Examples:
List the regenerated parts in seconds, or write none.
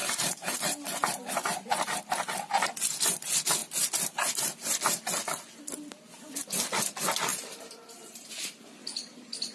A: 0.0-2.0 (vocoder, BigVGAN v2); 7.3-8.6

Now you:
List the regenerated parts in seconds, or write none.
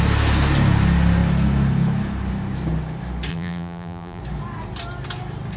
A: 3.3-4.2 (vocoder, BigVGAN v2)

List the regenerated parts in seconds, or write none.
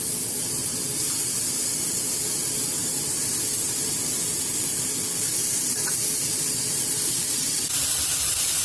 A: none